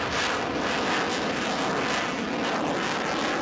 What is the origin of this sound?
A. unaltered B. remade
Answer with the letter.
A